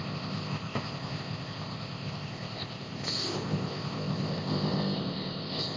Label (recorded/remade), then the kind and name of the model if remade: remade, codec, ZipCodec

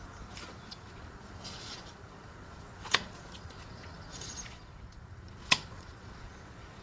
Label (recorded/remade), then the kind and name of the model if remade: remade, vocoder, Vocos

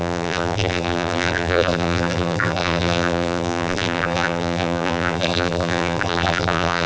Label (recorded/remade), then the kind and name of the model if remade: remade, vocoder, BigVGAN v2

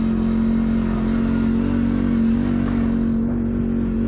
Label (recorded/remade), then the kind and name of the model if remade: recorded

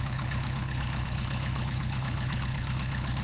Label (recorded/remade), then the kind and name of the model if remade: remade, codec, HILCodec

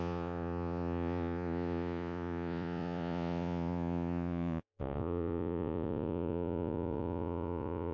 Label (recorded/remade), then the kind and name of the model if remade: remade, vocoder, Vocos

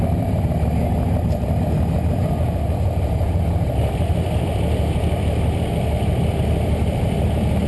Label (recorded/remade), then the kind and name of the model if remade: remade, vocoder, BigVGAN v2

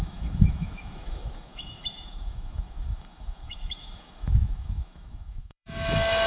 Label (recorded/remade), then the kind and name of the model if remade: remade, autoencoder, DAC-VAE